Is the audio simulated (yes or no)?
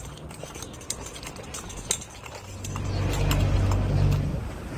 no